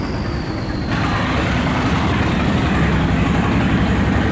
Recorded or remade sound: recorded